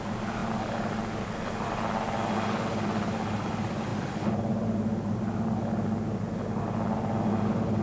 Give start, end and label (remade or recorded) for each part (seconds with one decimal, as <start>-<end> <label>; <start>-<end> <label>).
0.0-7.8 recorded